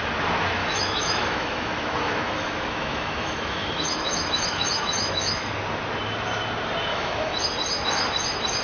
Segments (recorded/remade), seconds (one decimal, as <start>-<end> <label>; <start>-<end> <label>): 0.0-0.6 recorded; 0.6-5.5 remade; 5.5-6.9 recorded; 6.9-7.4 remade; 7.4-8.6 recorded